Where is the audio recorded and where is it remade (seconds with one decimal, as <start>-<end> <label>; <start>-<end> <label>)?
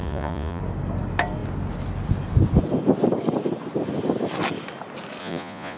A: 0.0-0.6 remade; 0.6-5.2 recorded; 5.2-5.8 remade